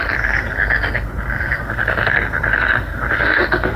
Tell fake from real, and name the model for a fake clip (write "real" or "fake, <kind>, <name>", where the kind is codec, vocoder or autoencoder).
fake, codec, SNAC